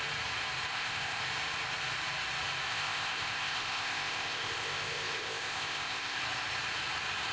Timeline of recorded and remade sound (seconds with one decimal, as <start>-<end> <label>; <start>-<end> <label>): 0.0-0.7 recorded; 0.7-1.2 remade; 1.2-2.7 recorded; 2.7-6.2 remade; 6.2-7.3 recorded